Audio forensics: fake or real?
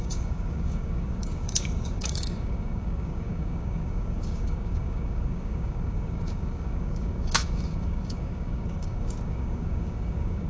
fake